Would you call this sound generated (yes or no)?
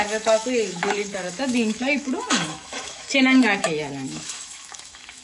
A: yes